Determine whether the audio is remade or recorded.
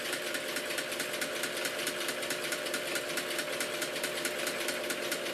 recorded